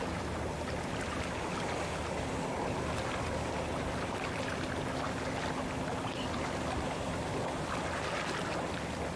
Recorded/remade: recorded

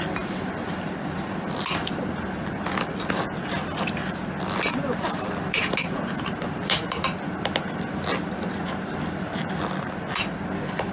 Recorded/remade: recorded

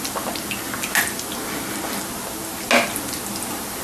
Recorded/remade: recorded